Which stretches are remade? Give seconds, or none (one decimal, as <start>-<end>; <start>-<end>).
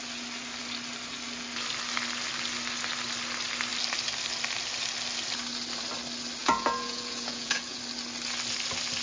6.4-7.8